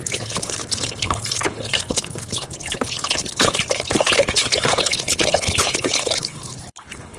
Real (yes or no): no